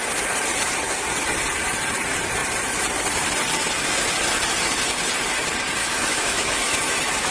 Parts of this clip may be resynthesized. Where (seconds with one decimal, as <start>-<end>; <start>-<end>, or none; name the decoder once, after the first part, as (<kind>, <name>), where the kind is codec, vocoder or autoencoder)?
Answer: 5.8-7.3 (autoencoder, DAC-VAE)